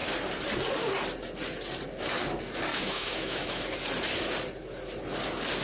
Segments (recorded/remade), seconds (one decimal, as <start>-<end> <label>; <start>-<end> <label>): 0.0-2.7 recorded; 2.7-3.6 remade; 3.6-5.6 recorded